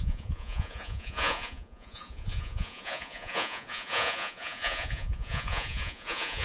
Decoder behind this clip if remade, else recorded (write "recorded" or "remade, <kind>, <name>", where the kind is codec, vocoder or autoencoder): remade, vocoder, Vocos